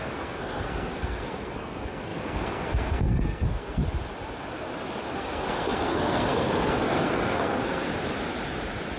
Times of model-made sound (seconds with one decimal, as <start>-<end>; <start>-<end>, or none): 0.0-3.8; 5.1-7.9